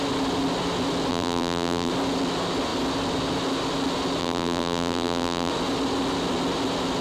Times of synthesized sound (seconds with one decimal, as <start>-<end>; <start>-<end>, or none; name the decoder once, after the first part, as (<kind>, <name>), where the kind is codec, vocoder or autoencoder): 1.1-1.9 (vocoder, BigVGAN v2); 4.2-5.5